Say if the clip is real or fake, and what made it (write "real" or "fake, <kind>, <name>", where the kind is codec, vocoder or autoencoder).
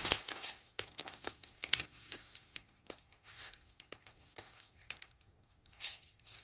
fake, codec, SNAC